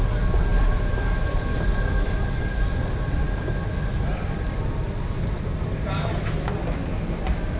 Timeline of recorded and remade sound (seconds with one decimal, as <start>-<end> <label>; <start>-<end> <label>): 0.0-7.6 recorded

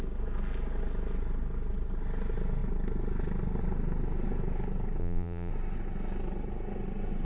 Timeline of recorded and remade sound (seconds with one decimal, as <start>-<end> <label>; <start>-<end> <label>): 0.0-5.0 recorded; 5.0-5.5 remade; 5.5-7.2 recorded